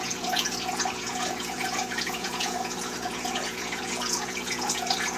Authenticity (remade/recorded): remade